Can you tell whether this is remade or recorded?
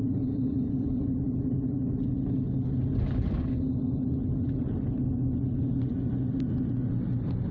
recorded